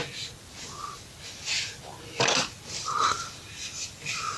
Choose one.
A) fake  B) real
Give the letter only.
B